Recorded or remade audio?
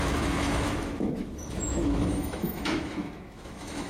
remade